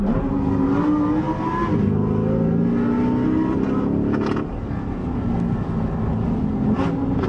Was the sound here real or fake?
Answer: real